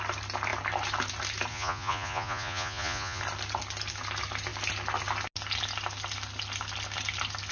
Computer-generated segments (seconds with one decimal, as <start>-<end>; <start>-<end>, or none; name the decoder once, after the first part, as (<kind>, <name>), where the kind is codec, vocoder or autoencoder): 1.5-3.2 (vocoder, Vocos)